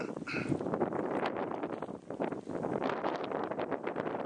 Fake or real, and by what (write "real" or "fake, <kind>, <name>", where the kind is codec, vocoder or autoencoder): real